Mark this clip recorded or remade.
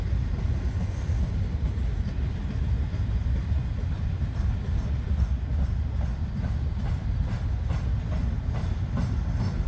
recorded